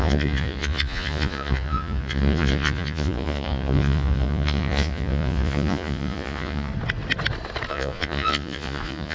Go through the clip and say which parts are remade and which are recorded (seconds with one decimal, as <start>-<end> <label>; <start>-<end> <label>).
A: 0.0-6.7 remade; 6.7-7.7 recorded; 7.7-9.1 remade